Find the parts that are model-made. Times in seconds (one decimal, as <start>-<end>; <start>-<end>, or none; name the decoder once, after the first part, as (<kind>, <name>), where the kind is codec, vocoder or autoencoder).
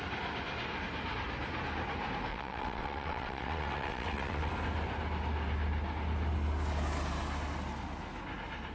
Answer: 2.3-4.5 (vocoder, WaveNeXt)